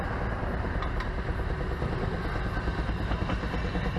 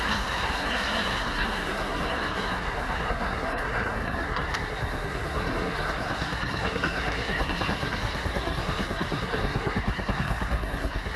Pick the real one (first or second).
first